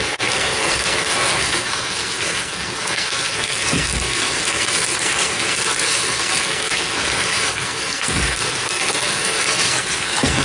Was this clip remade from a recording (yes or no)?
yes